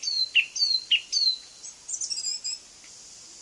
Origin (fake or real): real